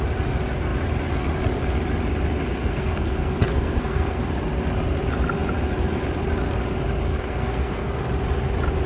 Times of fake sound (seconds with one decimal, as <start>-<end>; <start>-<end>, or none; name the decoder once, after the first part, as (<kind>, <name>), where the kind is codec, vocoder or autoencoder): 2.6-4.2 (codec, SNAC); 7.1-7.9